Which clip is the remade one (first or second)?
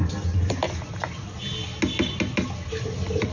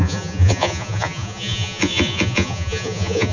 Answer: second